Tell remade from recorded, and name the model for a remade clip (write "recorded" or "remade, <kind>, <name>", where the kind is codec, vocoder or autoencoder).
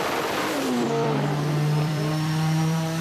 remade, vocoder, BigVGAN v2